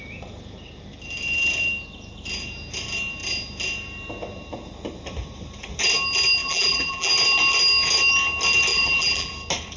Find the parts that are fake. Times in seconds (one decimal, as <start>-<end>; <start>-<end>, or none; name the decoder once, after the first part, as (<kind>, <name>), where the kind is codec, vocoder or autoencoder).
6.4-7.1 (vocoder, BigVGAN v2); 8.7-9.3